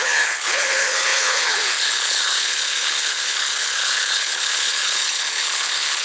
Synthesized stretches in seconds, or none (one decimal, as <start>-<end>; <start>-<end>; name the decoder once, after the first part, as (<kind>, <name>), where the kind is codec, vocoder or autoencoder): 0.0-6.0 (codec, HILCodec)